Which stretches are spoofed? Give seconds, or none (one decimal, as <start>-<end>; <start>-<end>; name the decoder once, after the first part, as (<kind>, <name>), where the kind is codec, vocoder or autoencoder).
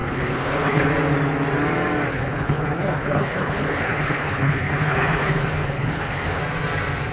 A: 0.0-0.9 (codec, HILCodec); 2.1-6.4